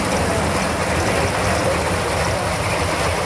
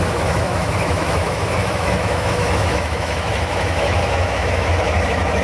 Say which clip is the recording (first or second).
first